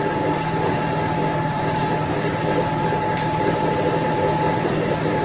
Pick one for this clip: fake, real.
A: fake